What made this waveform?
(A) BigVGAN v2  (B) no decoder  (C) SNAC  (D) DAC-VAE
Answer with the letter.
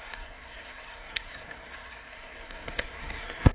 C